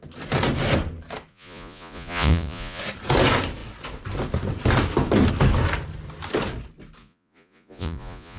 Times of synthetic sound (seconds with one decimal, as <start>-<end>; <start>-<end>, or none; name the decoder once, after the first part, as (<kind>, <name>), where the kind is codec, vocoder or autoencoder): 1.3-2.8 (vocoder, Vocos); 7.0-8.4